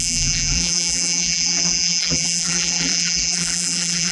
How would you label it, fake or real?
fake